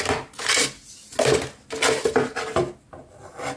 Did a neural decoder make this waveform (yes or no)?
no